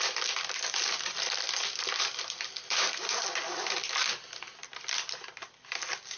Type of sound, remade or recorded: remade